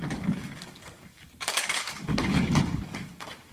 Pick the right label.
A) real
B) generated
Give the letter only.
B